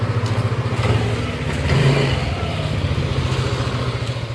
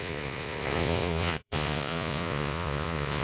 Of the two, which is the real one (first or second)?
first